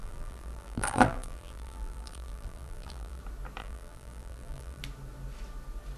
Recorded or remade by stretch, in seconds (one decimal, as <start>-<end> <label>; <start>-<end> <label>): 0.0-3.2 remade; 3.2-3.6 recorded; 3.6-4.8 remade; 4.8-6.0 recorded